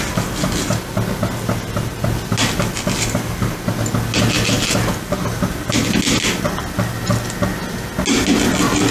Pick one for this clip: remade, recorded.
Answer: recorded